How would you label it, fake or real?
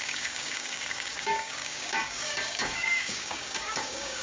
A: fake